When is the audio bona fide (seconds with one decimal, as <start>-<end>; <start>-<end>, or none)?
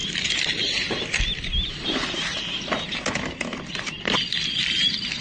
1.2-3.5; 4.7-5.2